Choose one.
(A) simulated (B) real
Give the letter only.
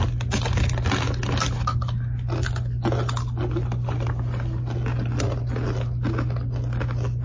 B